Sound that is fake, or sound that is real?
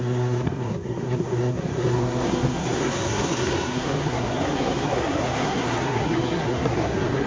fake